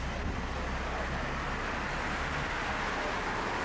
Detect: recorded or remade recorded